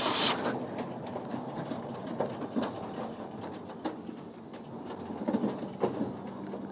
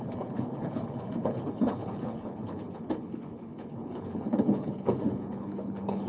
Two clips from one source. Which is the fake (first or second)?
second